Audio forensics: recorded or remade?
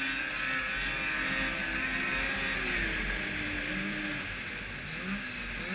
recorded